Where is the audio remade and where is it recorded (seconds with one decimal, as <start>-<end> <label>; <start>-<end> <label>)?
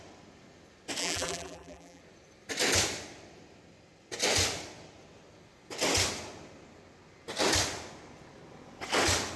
0.0-1.0 recorded; 1.0-2.0 remade; 2.0-9.4 recorded